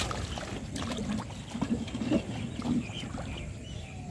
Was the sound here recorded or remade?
recorded